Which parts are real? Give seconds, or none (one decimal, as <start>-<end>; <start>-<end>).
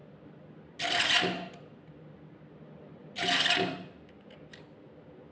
0.0-5.3